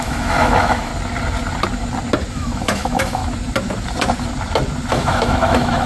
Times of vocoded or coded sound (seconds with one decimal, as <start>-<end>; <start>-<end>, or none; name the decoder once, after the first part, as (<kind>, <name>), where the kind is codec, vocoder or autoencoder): 0.0-0.9 (autoencoder, DAC-VAE); 2.3-3.2; 4.9-5.9